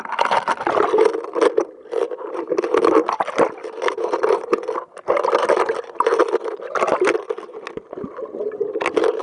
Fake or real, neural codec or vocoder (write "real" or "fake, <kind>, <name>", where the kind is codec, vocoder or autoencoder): real